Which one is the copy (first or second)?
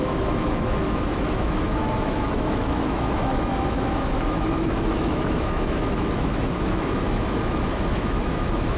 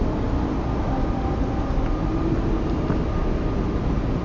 first